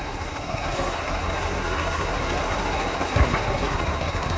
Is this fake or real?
fake